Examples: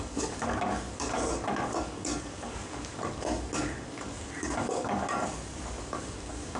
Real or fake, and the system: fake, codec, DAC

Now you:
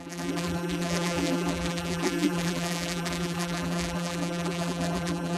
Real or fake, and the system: fake, vocoder, BigVGAN v2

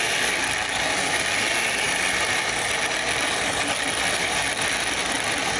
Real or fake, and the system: real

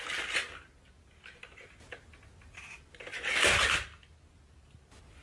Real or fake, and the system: real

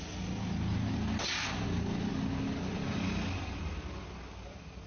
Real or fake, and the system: real